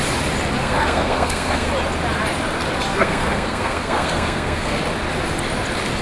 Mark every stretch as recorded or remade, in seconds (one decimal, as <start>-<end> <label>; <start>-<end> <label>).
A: 0.0-0.6 recorded; 0.6-1.7 remade; 1.7-2.9 recorded; 2.9-4.8 remade; 4.8-6.0 recorded